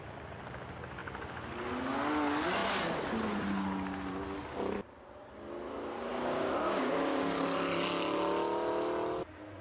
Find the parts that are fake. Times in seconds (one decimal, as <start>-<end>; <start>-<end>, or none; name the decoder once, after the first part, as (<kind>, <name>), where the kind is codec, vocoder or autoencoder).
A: 6.1-7.2 (codec, DAC)